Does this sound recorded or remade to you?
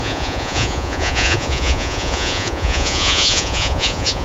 remade